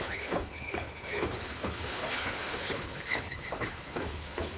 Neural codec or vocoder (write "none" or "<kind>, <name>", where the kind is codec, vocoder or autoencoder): codec, HILCodec